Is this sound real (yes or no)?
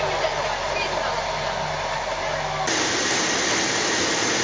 yes